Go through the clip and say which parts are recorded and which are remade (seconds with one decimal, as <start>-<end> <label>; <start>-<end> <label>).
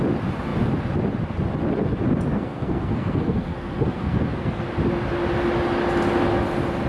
0.0-2.3 recorded; 2.3-4.6 remade; 4.6-6.9 recorded